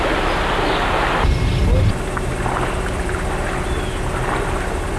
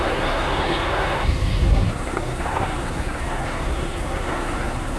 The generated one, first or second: second